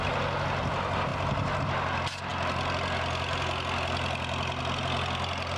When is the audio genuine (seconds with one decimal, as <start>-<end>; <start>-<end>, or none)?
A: 0.0-5.6